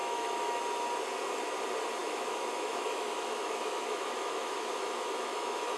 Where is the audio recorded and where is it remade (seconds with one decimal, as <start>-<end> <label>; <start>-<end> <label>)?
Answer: 0.0-0.6 remade; 0.6-2.0 recorded; 2.0-5.8 remade